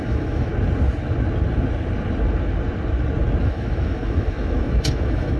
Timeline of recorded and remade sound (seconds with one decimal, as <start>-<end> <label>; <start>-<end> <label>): 0.0-0.5 remade; 0.5-3.4 recorded; 3.4-5.4 remade